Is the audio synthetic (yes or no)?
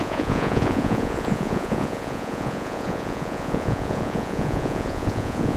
yes